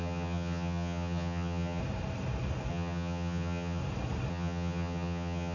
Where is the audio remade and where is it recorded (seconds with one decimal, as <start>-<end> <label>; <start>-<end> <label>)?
0.0-1.8 remade; 1.8-2.7 recorded; 2.7-3.8 remade; 3.8-4.3 recorded; 4.3-5.5 remade